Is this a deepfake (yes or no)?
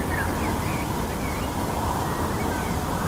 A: no